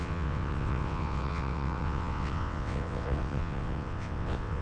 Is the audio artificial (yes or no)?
yes